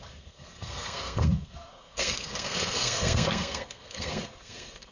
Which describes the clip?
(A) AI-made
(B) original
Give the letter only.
A